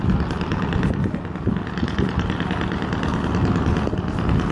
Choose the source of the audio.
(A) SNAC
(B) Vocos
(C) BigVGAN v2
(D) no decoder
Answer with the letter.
D